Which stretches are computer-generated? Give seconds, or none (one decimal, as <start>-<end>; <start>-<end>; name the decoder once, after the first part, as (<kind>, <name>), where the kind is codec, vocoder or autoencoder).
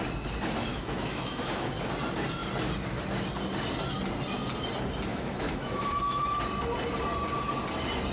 0.7-1.9 (autoencoder, DAC-VAE); 5.1-6.4